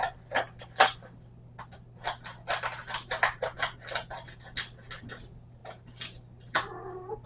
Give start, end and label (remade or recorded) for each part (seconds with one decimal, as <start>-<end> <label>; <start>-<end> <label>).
0.0-7.3 recorded